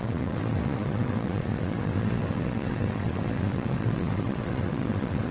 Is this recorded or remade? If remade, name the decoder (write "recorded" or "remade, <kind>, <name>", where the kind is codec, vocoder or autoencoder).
remade, vocoder, WaveNeXt